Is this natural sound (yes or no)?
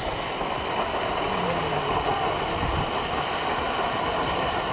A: yes